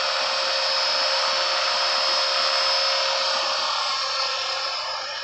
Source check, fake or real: real